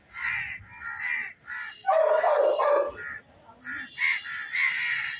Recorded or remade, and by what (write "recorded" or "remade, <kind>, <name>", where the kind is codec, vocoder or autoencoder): recorded